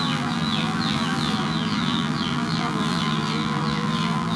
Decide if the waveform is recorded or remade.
remade